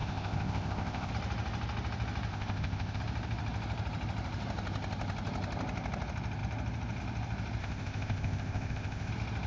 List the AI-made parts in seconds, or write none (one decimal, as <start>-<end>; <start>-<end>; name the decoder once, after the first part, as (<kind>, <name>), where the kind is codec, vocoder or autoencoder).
0.0-1.1 (codec, ZipCodec); 2.3-3.0; 7.6-9.1